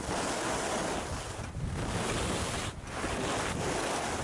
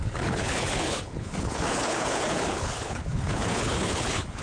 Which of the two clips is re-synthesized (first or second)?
second